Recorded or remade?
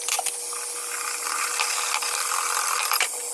recorded